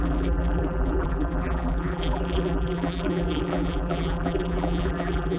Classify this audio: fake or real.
fake